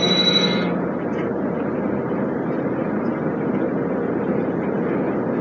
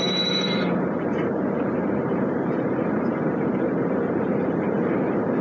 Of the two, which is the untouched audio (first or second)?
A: first